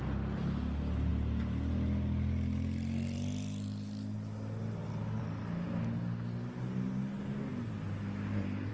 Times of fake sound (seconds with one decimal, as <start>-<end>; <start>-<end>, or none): none